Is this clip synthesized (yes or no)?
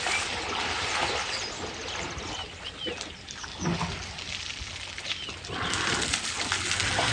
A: no